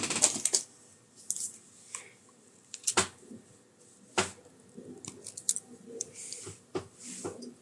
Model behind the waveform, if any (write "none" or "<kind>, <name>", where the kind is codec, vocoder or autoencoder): none